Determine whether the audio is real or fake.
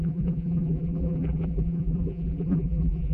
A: fake